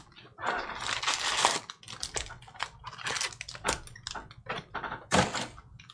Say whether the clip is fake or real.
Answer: real